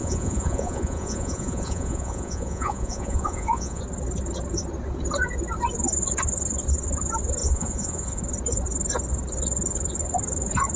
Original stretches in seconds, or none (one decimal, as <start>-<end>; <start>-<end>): 3.8-7.4; 8.2-10.8